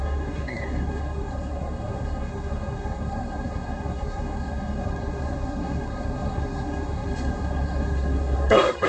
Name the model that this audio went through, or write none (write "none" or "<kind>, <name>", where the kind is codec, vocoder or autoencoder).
codec, SNAC